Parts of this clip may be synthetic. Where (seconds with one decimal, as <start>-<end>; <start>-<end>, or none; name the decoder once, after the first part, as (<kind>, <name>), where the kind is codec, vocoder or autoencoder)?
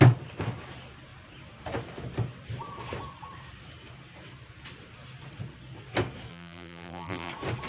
6.3-7.3 (vocoder, BigVGAN v2)